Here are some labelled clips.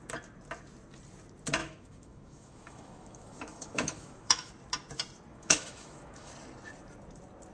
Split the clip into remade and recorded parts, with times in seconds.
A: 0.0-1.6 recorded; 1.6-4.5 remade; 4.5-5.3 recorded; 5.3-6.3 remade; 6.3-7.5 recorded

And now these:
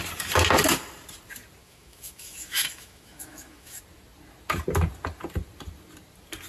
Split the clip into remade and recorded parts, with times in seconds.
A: 0.0-1.6 recorded; 1.6-3.8 remade; 3.8-6.5 recorded

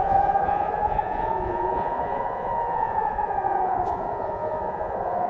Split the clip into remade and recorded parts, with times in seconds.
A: 0.0-5.3 remade

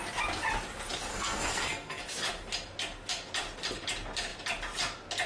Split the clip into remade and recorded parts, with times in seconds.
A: 0.0-1.1 recorded; 1.1-2.0 remade; 2.0-5.3 recorded

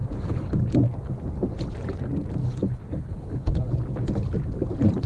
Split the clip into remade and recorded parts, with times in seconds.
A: 0.0-0.6 remade; 0.6-2.4 recorded; 2.4-3.6 remade; 3.6-5.1 recorded